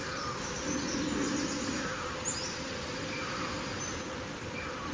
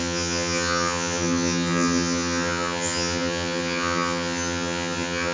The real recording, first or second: first